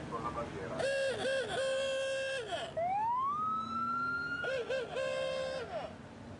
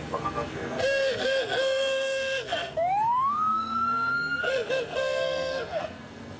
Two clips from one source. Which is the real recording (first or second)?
first